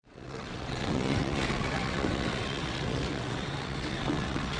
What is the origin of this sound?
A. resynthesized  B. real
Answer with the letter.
A